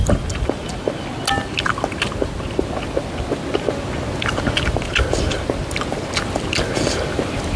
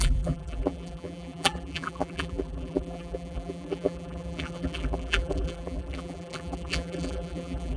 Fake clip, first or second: second